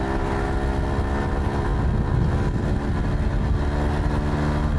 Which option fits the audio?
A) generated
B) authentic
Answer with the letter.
B